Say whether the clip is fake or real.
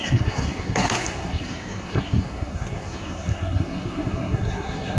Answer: fake